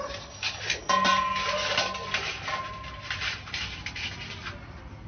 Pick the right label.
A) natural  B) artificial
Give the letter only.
A